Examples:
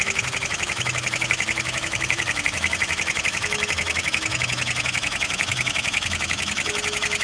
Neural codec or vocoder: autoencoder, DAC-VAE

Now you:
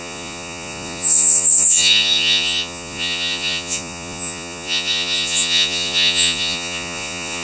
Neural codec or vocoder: vocoder, Vocos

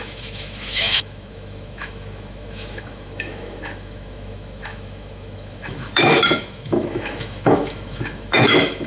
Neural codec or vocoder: autoencoder, DAC-VAE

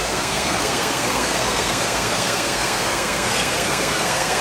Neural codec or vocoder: codec, SNAC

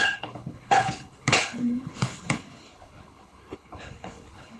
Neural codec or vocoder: codec, HILCodec